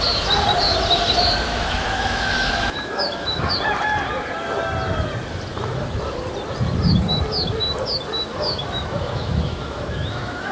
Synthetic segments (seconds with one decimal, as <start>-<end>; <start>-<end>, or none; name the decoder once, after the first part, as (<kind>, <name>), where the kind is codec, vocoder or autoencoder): 1.5-3.5 (autoencoder, DAC-VAE); 8.3-10.5